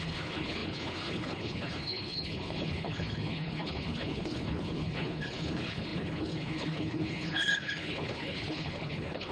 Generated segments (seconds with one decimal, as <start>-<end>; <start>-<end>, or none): 0.0-9.3